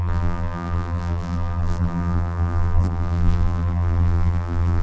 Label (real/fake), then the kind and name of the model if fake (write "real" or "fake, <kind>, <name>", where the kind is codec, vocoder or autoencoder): fake, vocoder, BigVGAN v2